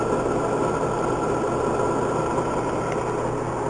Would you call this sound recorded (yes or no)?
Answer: yes